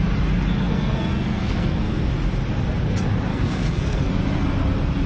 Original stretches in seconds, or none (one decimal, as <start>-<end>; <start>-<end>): 0.0-0.6; 2.1-3.3; 4.1-5.1